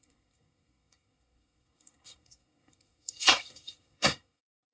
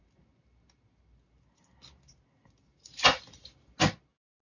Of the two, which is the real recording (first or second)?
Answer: second